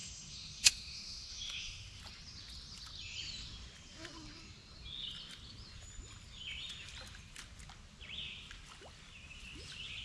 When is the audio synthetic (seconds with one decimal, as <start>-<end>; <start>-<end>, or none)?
0.0-2.0